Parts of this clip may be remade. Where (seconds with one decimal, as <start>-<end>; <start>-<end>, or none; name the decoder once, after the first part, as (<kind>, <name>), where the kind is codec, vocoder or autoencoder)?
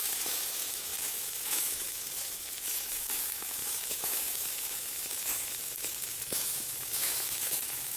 0.0-8.0 (autoencoder, DAC-VAE)